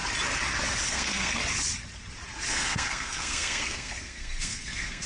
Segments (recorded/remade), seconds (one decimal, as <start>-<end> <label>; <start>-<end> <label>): 0.0-0.9 recorded; 0.9-1.4 remade; 1.4-2.5 recorded; 2.5-5.1 remade